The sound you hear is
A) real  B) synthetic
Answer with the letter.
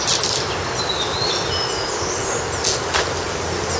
A